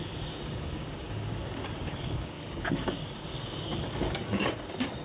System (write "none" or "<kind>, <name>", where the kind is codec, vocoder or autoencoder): codec, DAC